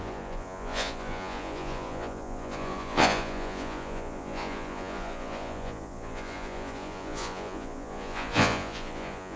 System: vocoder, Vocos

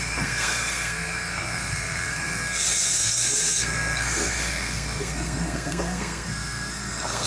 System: codec, SNAC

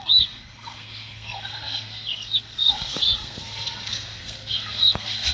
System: codec, SNAC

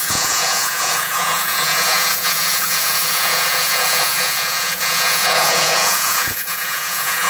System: vocoder, Vocos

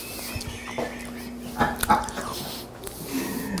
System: none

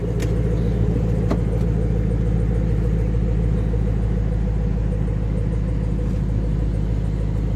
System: none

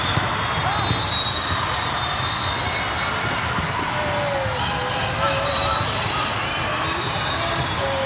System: none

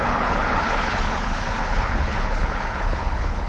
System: codec, HILCodec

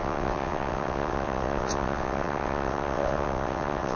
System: vocoder, WaveNeXt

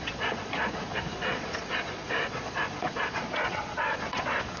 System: vocoder, Vocos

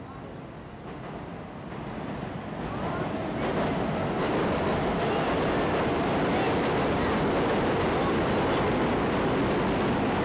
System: none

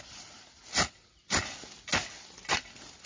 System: none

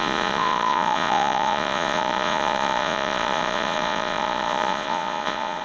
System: vocoder, Vocos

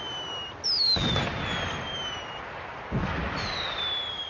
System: none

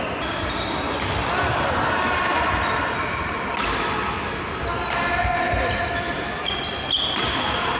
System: none